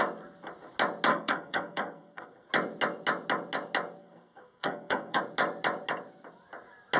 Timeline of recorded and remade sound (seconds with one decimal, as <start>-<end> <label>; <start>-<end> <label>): 0.0-1.1 recorded; 1.1-2.5 remade; 2.5-4.0 recorded; 4.0-5.2 remade; 5.2-7.0 recorded